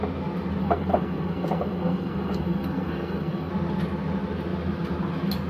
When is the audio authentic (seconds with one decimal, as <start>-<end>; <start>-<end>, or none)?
0.0-0.6; 3.5-5.5